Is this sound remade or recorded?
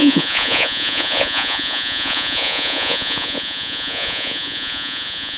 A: remade